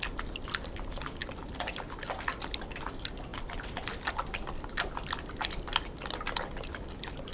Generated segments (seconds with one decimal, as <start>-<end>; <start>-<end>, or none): none